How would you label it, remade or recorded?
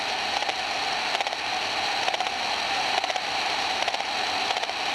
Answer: recorded